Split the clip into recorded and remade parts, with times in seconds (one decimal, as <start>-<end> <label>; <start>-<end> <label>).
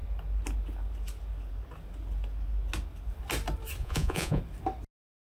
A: 0.0-3.8 recorded; 3.8-4.4 remade; 4.4-5.4 recorded